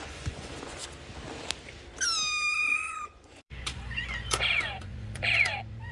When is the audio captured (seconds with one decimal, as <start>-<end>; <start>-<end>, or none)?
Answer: 0.8-2.7